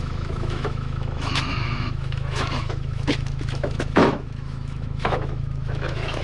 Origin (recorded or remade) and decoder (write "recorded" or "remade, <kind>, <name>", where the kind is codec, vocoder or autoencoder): remade, autoencoder, DAC-VAE